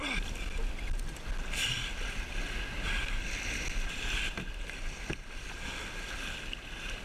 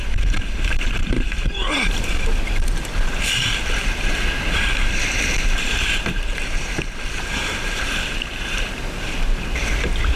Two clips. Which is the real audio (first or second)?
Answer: first